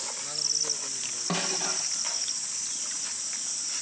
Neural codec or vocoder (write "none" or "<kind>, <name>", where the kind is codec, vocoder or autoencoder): none